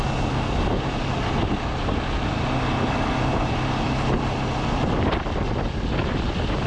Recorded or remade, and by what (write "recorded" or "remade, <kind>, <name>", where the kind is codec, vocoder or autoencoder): recorded